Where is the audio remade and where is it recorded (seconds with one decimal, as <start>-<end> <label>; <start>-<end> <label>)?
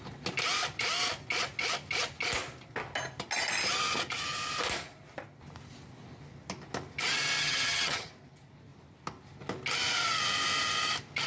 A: 0.0-7.4 recorded; 7.4-8.1 remade; 8.1-11.3 recorded